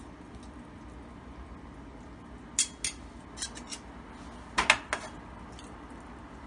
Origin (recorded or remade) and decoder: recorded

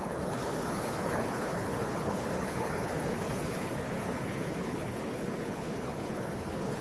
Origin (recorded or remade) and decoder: remade, codec, HILCodec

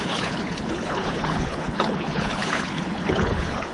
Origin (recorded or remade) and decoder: remade, codec, HILCodec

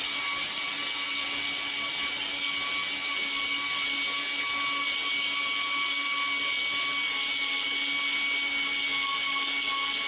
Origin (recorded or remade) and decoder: recorded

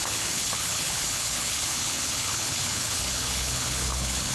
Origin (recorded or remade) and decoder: remade, codec, HILCodec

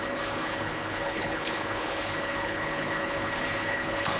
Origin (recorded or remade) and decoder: remade, codec, HILCodec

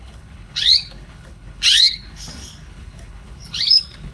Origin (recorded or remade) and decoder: remade, codec, HILCodec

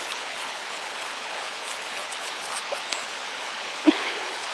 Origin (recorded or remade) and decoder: remade, codec, HILCodec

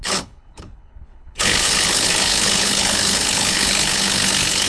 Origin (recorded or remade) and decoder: remade, codec, HILCodec